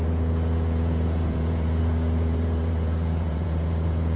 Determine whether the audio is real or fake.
fake